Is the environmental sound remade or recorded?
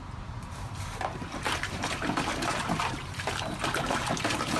remade